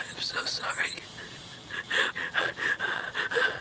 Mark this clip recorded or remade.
remade